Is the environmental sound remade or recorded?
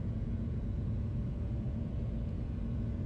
remade